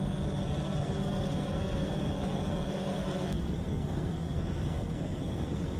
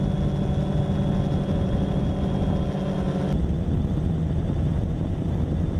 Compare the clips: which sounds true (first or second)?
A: second